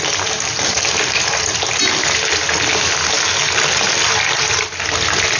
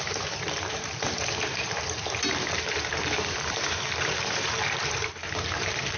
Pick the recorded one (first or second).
first